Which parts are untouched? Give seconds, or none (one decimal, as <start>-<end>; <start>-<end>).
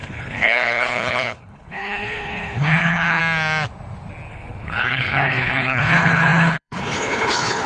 3.2-4.3